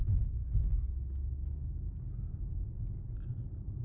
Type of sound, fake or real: real